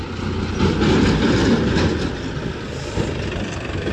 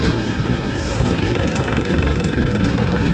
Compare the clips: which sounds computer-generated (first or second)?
second